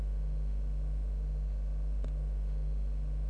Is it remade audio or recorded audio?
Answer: remade